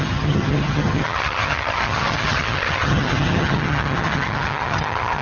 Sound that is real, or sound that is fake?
fake